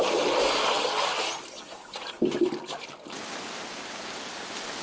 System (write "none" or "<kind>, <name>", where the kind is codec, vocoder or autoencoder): none